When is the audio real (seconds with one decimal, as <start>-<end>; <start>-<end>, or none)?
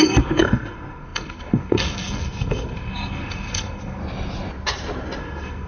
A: 4.0-5.2